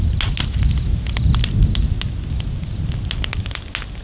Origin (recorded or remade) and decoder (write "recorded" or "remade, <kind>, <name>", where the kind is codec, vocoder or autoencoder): recorded